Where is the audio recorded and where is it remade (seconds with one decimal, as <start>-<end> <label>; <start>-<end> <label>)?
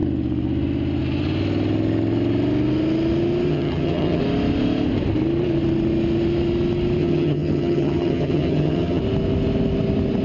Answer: 0.0-3.5 recorded; 3.5-4.2 remade; 4.2-7.0 recorded; 7.0-9.0 remade; 9.0-10.2 recorded